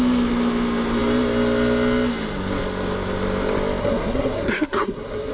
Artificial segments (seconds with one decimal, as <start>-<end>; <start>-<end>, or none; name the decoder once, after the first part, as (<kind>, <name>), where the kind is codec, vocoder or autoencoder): 3.8-5.3 (codec, SNAC)